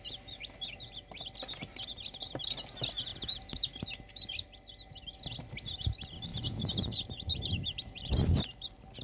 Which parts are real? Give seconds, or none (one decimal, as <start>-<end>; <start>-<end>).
0.0-3.1; 3.8-6.3; 8.4-9.0